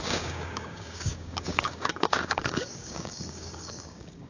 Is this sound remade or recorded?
remade